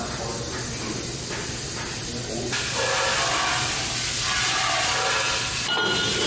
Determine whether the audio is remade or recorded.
recorded